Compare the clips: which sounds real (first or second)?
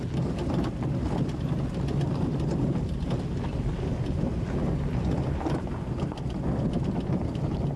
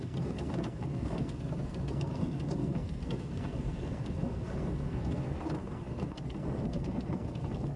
first